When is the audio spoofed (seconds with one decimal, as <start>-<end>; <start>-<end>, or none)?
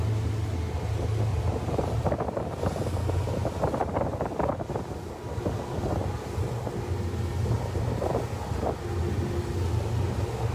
1.3-2.6